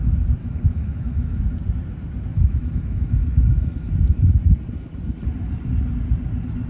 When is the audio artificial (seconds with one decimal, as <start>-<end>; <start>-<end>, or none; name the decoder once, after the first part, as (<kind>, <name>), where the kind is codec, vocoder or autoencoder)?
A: 0.4-1.4 (autoencoder, DAC-VAE); 2.3-3.9